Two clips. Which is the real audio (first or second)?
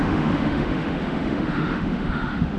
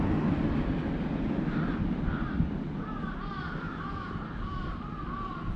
second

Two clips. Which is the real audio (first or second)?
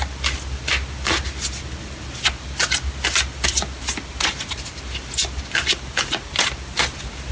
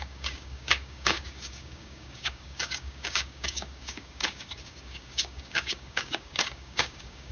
first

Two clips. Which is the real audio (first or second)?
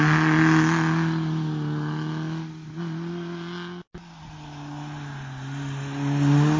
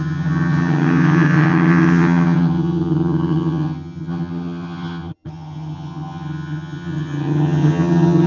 first